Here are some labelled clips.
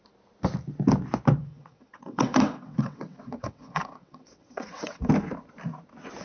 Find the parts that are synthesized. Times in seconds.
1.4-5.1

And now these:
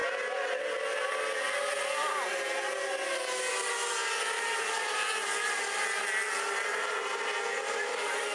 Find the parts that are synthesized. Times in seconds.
none